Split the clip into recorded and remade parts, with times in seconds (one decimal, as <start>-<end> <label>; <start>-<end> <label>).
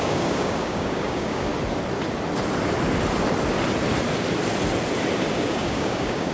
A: 0.0-1.5 remade; 1.5-5.3 recorded; 5.3-6.3 remade